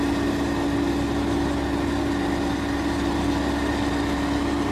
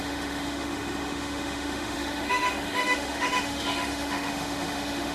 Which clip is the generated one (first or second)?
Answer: second